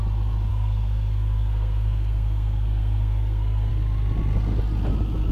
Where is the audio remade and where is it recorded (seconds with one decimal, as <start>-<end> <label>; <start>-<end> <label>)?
0.0-0.5 recorded; 0.5-3.7 remade; 3.7-5.3 recorded